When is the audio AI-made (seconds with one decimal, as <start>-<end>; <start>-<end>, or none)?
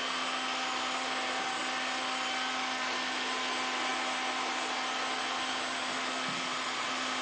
none